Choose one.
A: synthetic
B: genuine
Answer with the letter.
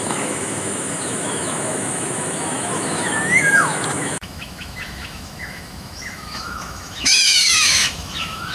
A